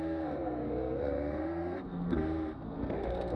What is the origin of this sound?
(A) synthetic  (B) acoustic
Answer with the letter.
A